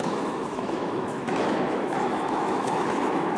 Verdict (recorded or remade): remade